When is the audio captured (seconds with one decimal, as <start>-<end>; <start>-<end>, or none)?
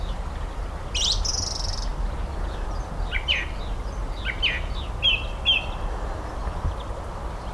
0.0-7.5